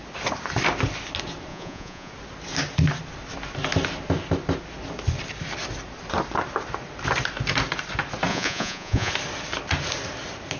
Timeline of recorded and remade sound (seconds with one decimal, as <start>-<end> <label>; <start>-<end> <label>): 0.0-1.5 recorded; 1.5-2.1 remade; 2.1-8.3 recorded; 8.3-9.1 remade; 9.1-10.6 recorded